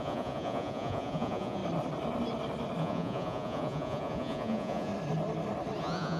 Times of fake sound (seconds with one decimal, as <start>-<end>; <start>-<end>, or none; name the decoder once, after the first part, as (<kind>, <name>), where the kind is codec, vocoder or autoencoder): 0.0-1.6 (vocoder, Vocos); 2.8-4.9; 5.8-6.2